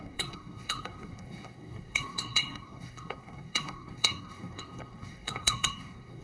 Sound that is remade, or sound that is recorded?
remade